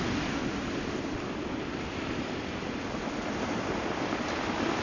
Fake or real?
real